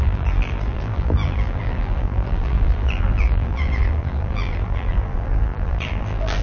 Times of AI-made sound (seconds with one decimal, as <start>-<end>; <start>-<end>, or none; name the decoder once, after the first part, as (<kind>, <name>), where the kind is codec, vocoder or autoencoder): 0.0-6.4 (vocoder, BigVGAN v2)